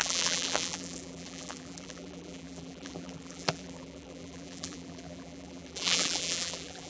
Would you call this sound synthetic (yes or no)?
yes